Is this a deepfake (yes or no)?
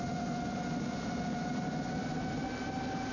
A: no